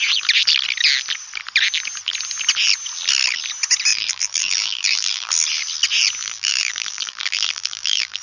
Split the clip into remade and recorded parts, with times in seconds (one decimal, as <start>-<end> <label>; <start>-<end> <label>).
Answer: 0.0-3.9 recorded; 3.9-5.3 remade; 5.3-6.2 recorded; 6.2-8.2 remade